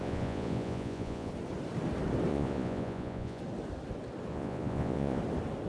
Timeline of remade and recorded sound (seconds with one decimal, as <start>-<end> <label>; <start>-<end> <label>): 0.0-1.3 remade; 1.3-2.3 recorded; 2.3-3.4 remade; 3.4-4.3 recorded; 4.3-5.2 remade; 5.2-5.7 recorded